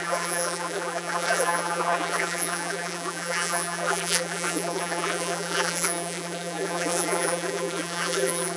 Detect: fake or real fake